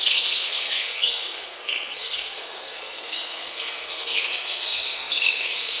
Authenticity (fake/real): fake